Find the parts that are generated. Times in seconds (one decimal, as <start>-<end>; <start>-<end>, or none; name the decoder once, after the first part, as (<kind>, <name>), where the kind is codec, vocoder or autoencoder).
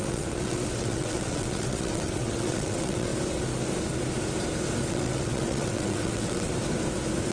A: 0.0-3.1 (vocoder, WaveNeXt); 4.9-6.5